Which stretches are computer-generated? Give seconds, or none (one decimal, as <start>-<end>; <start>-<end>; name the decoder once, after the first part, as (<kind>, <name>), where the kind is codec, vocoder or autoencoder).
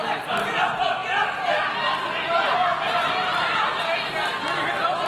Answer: none